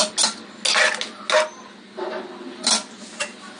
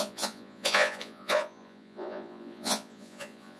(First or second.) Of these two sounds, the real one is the first